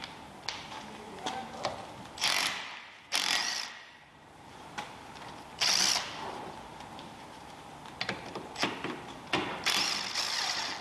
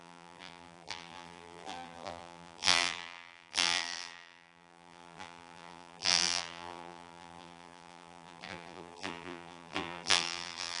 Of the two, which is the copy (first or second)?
second